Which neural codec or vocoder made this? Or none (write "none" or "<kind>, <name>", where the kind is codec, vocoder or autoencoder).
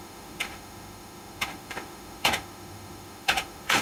autoencoder, DAC-VAE